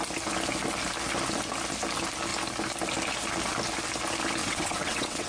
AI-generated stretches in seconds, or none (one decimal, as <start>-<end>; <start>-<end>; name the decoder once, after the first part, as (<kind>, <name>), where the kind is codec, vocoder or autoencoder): 4.4-5.3 (vocoder, WaveNeXt)